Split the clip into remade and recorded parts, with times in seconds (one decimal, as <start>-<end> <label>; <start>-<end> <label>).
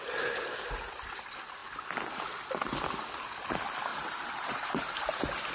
0.0-3.9 recorded; 3.9-5.5 remade